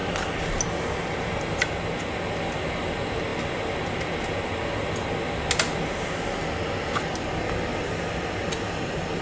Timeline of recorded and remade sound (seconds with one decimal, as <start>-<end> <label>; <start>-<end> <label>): 0.0-9.2 recorded